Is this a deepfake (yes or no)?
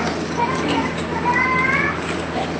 no